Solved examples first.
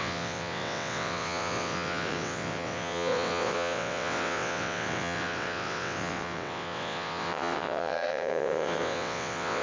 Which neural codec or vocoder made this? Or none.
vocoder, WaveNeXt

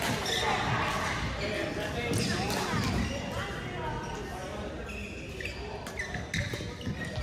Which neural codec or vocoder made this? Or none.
none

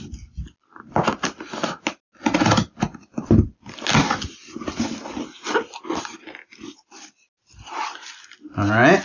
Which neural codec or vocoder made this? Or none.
none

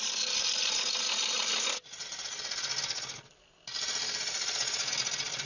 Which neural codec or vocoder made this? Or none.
none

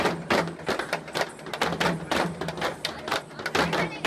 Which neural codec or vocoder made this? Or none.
none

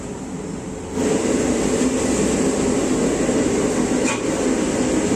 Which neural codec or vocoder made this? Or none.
none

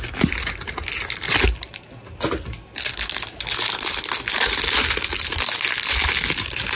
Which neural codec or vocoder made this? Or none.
none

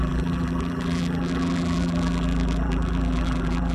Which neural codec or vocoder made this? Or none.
vocoder, BigVGAN v2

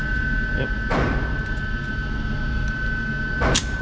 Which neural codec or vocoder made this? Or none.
none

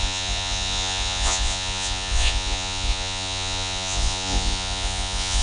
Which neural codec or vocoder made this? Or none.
vocoder, Vocos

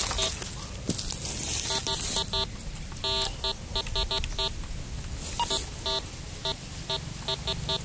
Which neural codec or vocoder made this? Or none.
none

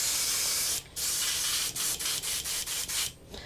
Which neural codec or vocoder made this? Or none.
none